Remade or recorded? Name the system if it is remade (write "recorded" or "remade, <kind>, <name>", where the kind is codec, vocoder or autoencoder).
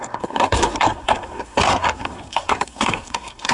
remade, codec, SNAC